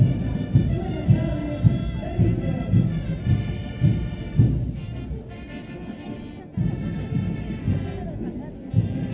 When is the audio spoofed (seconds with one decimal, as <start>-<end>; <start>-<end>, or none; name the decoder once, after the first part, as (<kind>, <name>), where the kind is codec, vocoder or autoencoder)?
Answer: none